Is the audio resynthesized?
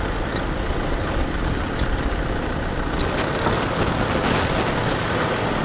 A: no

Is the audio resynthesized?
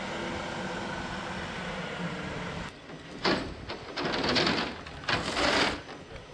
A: no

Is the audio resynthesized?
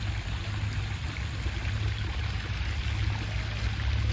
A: no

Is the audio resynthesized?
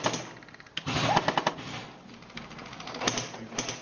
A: no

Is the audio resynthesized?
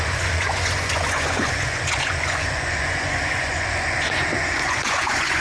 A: yes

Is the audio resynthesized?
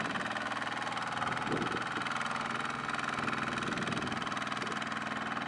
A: no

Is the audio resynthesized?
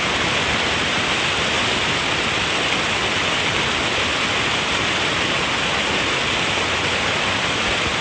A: no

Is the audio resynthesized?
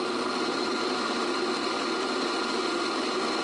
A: no